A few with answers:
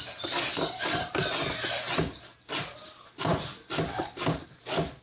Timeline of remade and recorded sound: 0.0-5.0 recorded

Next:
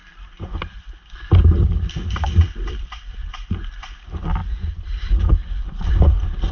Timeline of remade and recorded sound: 0.0-6.5 recorded

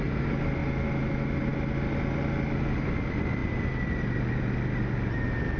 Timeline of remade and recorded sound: 0.0-5.6 recorded

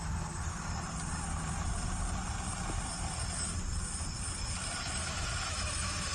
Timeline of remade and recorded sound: 0.0-5.0 recorded; 5.0-6.1 remade